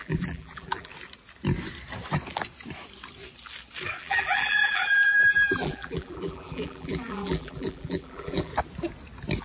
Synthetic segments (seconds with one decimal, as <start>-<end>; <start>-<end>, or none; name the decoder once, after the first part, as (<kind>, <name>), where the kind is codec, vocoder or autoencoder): 0.0-0.9 (vocoder, BigVGAN v2); 4.0-8.5